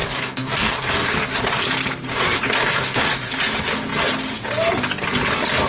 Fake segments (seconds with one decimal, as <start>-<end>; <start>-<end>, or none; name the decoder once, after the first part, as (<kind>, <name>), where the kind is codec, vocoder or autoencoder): 0.0-1.1 (codec, DAC); 2.1-3.1